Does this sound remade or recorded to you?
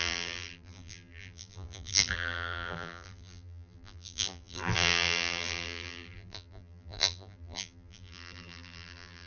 remade